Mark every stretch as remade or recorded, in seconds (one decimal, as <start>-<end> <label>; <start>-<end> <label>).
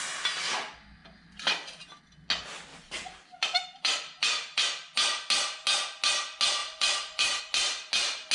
0.0-1.0 recorded; 1.0-2.0 remade; 2.0-2.7 recorded; 2.7-5.3 remade; 5.3-6.6 recorded; 6.6-7.4 remade; 7.4-8.3 recorded